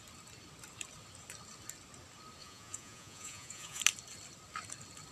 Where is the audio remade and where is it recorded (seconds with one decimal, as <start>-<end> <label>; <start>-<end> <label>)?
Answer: 0.0-2.4 recorded; 2.4-3.8 remade; 3.8-5.1 recorded

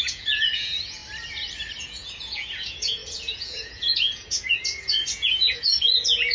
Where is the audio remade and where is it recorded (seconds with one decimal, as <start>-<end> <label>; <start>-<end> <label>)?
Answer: 0.0-1.0 remade; 1.0-1.8 recorded; 1.8-6.3 remade